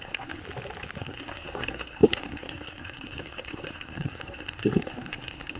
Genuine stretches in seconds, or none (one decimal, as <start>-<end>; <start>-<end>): 0.4-1.0

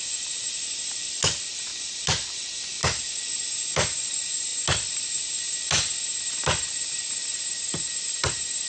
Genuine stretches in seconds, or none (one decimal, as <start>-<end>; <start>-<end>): 0.0-8.7

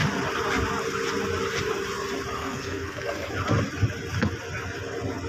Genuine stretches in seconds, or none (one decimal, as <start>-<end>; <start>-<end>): 0.0-2.4; 3.3-5.3

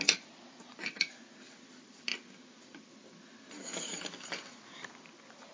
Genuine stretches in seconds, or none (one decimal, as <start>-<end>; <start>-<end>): 0.0-5.5

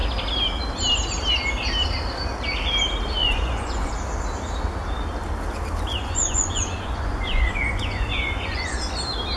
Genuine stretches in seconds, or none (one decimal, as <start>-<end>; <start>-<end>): 0.0-3.2; 3.9-5.9; 8.8-9.4

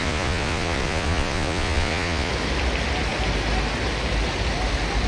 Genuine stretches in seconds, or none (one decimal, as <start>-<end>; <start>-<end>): 2.3-5.1

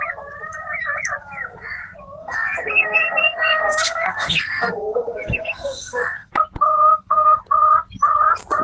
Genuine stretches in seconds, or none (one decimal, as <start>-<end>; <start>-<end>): 0.0-2.2; 6.3-6.7; 7.4-8.6